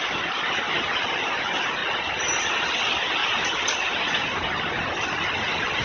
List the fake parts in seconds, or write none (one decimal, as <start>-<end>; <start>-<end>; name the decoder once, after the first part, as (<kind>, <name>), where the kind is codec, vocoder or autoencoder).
0.0-1.8 (vocoder, BigVGAN v2); 2.5-5.8